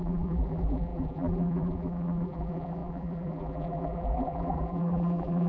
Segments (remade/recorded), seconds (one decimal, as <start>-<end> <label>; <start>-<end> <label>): 0.0-5.5 remade